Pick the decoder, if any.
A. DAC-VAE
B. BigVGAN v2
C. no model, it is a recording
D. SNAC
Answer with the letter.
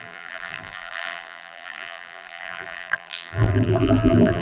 B